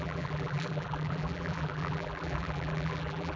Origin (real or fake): fake